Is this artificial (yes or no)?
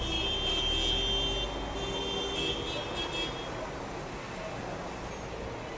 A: no